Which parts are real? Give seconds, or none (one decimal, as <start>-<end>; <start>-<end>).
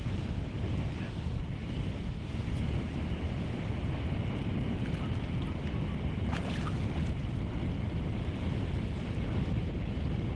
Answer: 0.0-10.4